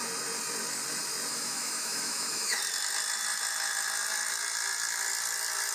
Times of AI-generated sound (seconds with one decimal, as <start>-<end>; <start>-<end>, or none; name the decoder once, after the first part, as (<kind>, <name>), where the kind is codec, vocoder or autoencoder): 1.3-2.6 (autoencoder, DAC-VAE)